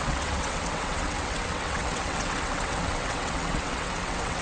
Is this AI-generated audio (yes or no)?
yes